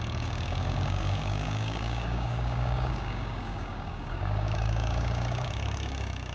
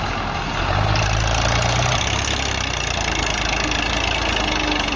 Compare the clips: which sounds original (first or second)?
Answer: second